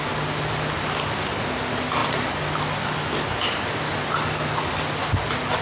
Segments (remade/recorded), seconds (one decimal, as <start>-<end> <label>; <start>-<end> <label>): 0.0-5.6 recorded